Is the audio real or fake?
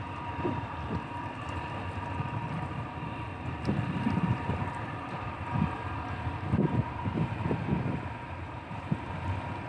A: fake